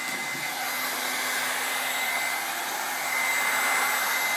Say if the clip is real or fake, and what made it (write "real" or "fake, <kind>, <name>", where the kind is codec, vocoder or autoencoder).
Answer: real